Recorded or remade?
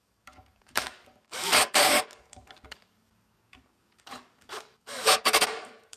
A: remade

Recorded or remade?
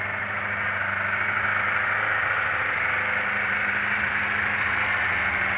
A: recorded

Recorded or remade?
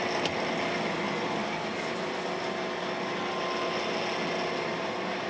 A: recorded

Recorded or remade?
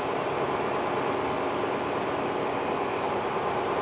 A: recorded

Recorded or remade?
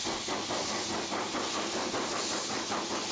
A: recorded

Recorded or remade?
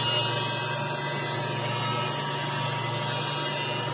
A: recorded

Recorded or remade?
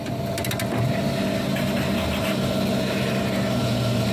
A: recorded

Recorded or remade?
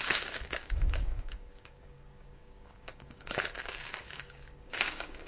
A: remade